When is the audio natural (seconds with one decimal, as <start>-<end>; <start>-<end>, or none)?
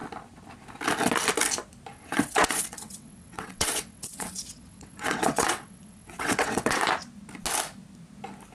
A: 0.0-1.9; 6.8-8.5